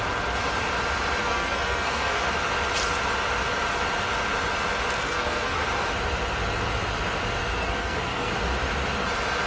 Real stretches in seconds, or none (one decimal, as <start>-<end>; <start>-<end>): 0.0-1.2; 2.3-5.0; 5.6-7.4; 8.3-9.5